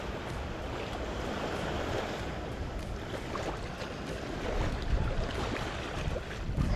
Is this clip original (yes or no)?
no